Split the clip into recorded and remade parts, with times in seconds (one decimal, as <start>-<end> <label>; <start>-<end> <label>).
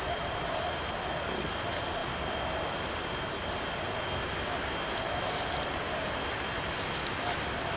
0.0-7.8 recorded